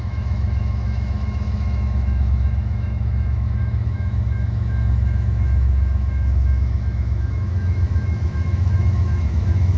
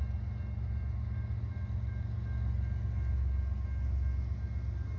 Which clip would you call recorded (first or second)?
second